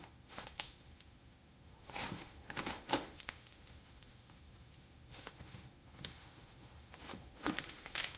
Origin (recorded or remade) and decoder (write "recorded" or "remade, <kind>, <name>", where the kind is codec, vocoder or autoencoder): remade, autoencoder, DAC-VAE